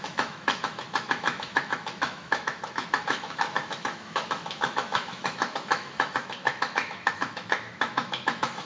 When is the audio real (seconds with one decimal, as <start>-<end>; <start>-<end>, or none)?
none